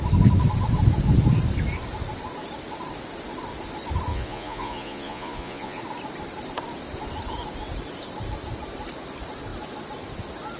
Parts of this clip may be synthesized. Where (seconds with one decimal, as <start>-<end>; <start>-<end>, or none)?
4.1-5.8